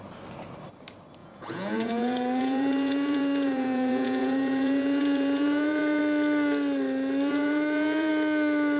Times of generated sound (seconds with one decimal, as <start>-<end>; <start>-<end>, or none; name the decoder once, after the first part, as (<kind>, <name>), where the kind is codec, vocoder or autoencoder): 1.2-6.0 (vocoder, Vocos); 7.3-8.1